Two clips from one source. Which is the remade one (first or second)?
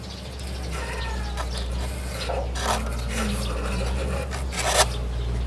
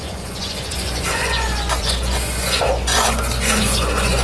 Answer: second